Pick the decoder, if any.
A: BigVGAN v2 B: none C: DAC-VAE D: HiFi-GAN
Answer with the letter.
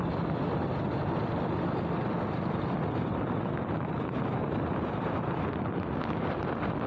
B